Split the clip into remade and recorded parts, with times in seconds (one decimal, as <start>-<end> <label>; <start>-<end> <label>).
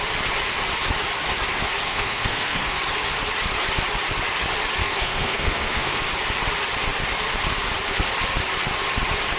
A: 0.0-1.9 recorded; 1.9-2.8 remade; 2.8-4.8 recorded; 4.8-6.0 remade; 6.0-9.4 recorded